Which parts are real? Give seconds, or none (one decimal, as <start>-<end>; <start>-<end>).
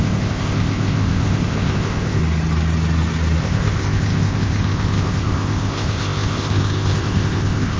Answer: 2.2-3.4